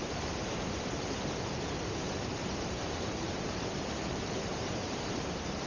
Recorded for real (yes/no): no